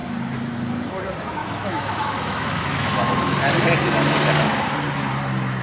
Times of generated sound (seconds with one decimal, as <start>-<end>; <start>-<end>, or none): 1.4-3.4